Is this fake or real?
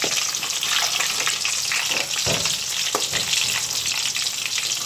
real